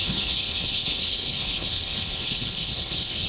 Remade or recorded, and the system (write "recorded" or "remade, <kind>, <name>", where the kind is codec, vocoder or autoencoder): remade, codec, HILCodec